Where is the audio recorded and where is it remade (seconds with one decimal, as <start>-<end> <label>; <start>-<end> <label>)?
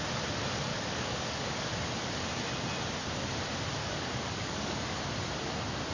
0.0-0.7 recorded; 0.7-1.7 remade; 1.7-3.8 recorded; 3.8-5.0 remade; 5.0-5.9 recorded